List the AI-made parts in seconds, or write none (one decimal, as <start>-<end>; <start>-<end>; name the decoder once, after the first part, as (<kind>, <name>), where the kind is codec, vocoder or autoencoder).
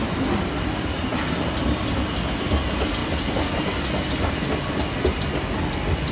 none